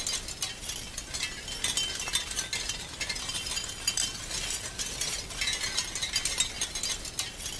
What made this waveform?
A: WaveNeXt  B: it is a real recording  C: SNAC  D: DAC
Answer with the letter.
B